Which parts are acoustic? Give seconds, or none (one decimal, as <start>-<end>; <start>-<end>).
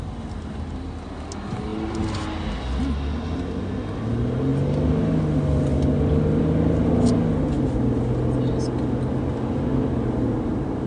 0.0-10.9